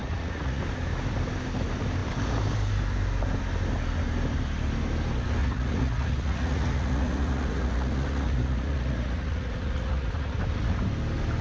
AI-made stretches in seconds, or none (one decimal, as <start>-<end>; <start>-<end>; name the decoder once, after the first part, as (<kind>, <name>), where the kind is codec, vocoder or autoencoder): 0.0-0.6 (vocoder, Vocos); 5.4-10.4